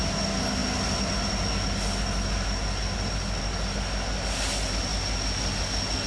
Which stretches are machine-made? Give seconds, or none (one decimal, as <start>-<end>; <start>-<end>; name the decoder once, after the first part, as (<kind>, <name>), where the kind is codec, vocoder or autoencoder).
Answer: none